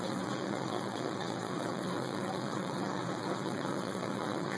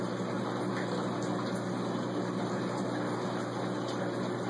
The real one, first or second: second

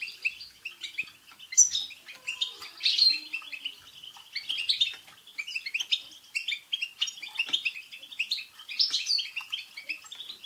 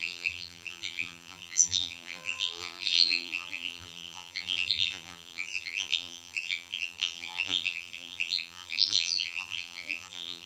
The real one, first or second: first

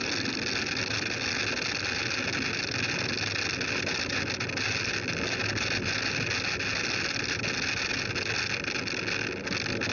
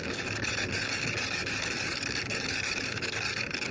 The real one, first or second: first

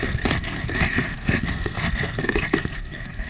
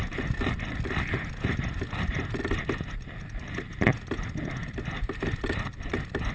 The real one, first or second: second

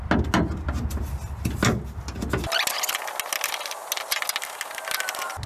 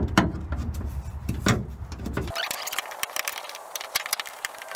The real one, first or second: first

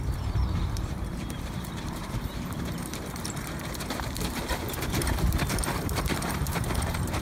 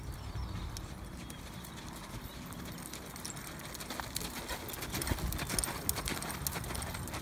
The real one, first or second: second